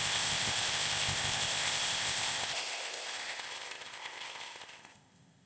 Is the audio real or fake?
fake